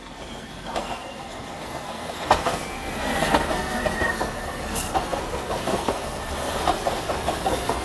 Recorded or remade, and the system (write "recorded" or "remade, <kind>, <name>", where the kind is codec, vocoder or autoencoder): remade, codec, SNAC